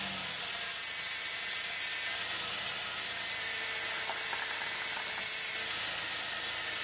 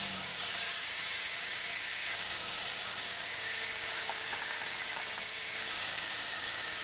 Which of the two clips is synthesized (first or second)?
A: second